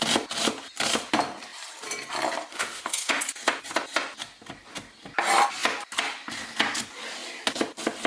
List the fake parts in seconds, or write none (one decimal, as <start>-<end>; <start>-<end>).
2.5-3.2